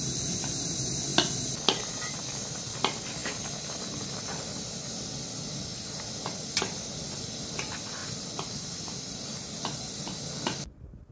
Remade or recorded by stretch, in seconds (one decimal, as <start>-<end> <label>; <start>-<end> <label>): 0.0-11.1 recorded